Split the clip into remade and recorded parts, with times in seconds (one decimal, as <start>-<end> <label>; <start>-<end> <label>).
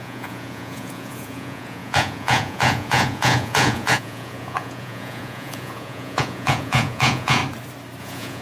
0.0-7.4 remade; 7.4-8.0 recorded; 8.0-8.4 remade